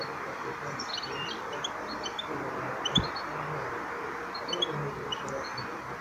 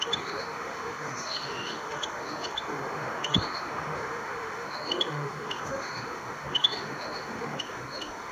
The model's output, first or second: second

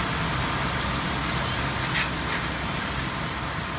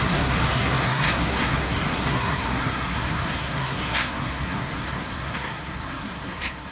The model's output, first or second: second